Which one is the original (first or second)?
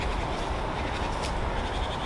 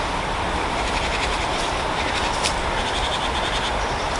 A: first